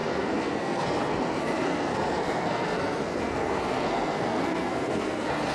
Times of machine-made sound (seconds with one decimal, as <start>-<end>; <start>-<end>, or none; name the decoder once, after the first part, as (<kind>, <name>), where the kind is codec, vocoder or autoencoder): 0.0-5.5 (codec, SNAC)

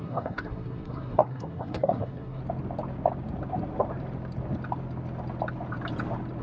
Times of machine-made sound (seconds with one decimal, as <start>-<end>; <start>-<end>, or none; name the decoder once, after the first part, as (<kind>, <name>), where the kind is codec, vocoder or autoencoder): 0.0-2.4 (codec, SNAC)